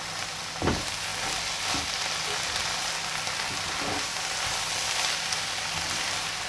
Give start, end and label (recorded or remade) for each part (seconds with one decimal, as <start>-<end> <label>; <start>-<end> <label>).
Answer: 0.0-6.5 recorded